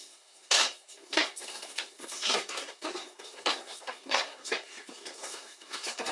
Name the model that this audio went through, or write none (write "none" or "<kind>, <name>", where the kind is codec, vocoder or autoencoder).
codec, SNAC